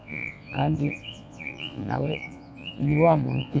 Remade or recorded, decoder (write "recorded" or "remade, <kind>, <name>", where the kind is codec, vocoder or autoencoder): remade, vocoder, Vocos